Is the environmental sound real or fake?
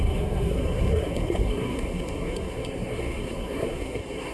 fake